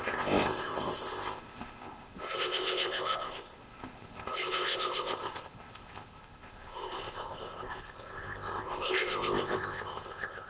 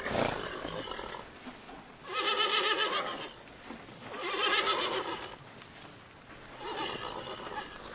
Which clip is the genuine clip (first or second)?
second